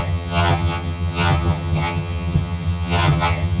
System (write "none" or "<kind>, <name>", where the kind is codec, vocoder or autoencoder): vocoder, HiFi-GAN